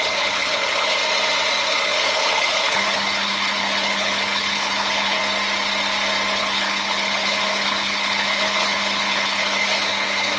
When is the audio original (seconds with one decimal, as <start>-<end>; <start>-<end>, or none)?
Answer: 1.0-1.7; 5.2-6.4